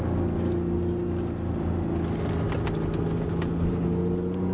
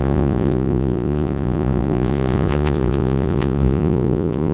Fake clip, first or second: second